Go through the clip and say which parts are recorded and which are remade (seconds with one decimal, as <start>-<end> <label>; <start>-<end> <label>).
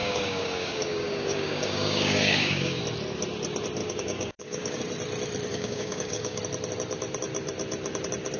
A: 0.0-2.8 remade; 2.8-3.8 recorded; 3.8-4.8 remade; 4.8-5.5 recorded; 5.5-6.4 remade; 6.4-8.4 recorded